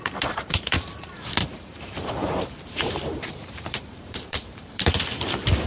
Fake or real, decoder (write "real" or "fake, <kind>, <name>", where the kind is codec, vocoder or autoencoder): fake, vocoder, BigVGAN v2